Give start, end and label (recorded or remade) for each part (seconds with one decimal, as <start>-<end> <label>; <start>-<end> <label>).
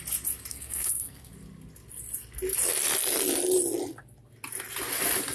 0.0-0.5 recorded; 0.5-1.3 remade; 1.3-5.3 recorded